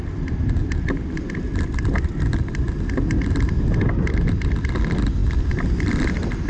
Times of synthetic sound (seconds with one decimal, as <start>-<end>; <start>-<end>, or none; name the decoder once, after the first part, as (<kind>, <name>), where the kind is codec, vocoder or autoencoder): none

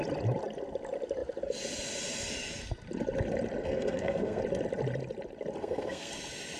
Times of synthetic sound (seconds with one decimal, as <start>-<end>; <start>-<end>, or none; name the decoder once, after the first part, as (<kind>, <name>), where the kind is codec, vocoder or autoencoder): 3.6-4.4 (codec, SNAC); 5.6-6.1

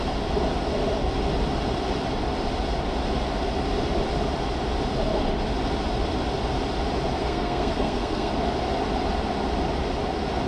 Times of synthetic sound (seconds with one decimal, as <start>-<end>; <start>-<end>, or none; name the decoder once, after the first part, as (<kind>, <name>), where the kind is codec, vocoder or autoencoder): 7.2-8.3 (codec, SNAC)

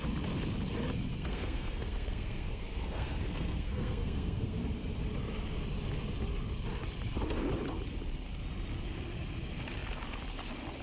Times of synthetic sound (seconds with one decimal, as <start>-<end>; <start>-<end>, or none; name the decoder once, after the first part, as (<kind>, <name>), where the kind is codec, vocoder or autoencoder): 1.1-4.7 (codec, SNAC)

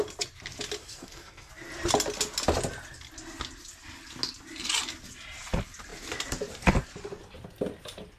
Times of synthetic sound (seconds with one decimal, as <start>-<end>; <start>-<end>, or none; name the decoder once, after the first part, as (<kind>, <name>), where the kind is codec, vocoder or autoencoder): 0.8-1.5 (codec, SNAC)

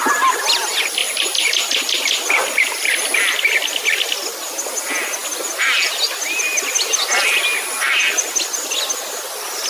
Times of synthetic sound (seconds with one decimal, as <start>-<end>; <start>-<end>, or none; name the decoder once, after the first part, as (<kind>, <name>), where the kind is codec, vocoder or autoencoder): none

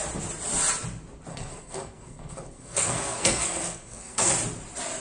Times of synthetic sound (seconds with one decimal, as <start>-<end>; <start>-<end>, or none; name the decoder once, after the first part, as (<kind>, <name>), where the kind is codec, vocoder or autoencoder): 1.3-4.3 (codec, SNAC)

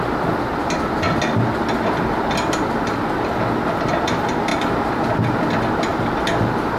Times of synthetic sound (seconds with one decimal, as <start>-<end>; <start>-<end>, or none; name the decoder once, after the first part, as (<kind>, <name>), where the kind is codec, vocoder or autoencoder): none